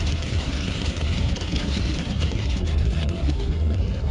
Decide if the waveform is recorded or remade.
remade